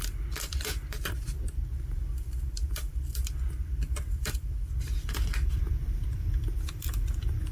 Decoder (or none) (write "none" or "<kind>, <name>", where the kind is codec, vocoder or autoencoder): vocoder, BigVGAN v2